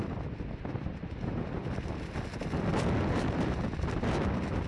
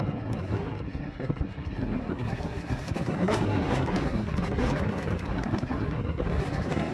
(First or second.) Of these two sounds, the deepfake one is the second